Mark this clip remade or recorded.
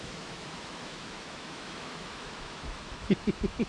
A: remade